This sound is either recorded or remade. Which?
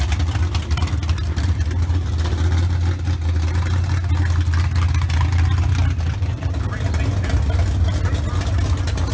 recorded